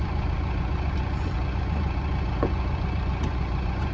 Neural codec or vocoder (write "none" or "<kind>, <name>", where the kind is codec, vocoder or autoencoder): vocoder, Vocos